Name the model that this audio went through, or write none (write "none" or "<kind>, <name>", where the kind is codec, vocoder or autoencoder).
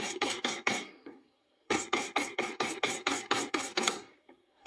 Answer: codec, SNAC